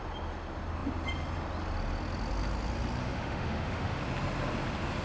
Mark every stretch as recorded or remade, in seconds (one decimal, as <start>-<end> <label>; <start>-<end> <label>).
0.0-3.0 recorded; 3.0-4.0 remade; 4.0-5.0 recorded